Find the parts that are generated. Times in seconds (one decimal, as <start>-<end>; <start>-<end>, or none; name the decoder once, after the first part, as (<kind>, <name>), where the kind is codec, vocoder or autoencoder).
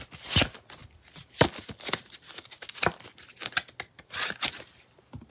none